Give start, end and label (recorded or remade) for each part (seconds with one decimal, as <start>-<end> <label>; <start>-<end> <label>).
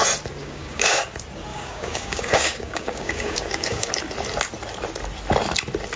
0.0-0.4 recorded; 0.4-1.0 remade; 1.0-1.5 recorded; 1.5-3.9 remade; 3.9-6.0 recorded